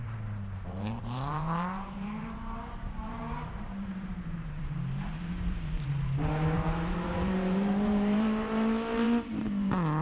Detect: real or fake fake